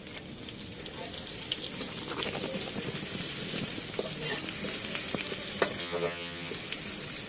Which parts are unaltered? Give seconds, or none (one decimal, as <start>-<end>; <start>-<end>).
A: 0.0-5.8; 6.5-7.3